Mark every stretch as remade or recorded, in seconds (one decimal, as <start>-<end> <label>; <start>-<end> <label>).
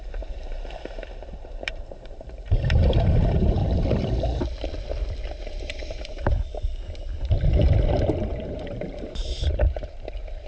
0.0-3.6 remade; 3.6-5.6 recorded; 5.6-6.3 remade; 6.3-8.3 recorded; 8.3-10.5 remade